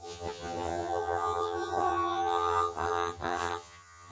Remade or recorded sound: remade